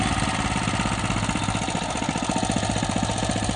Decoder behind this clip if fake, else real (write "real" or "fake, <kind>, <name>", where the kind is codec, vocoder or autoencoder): real